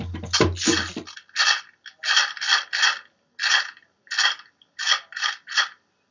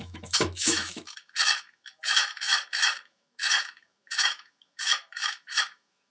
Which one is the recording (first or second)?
first